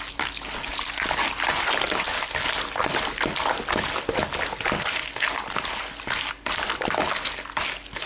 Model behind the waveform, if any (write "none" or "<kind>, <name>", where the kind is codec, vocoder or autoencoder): none